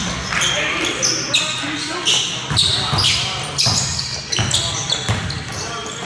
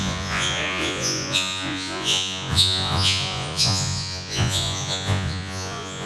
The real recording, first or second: first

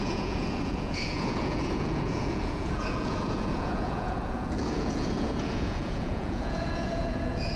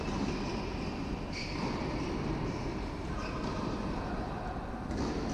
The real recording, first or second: second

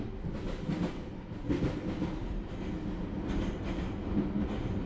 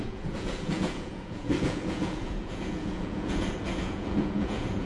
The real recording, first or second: first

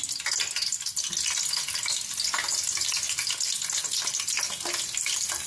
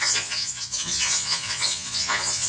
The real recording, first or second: first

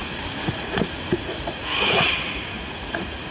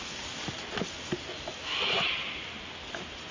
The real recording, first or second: second